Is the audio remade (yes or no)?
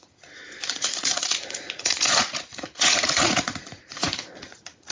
yes